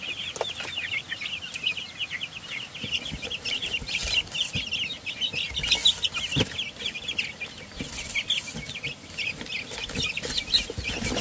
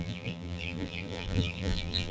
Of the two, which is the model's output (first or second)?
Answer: second